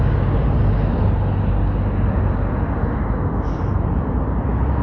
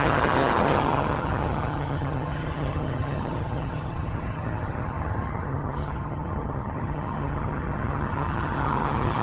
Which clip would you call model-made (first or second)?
second